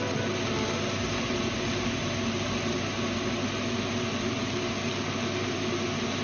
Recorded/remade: recorded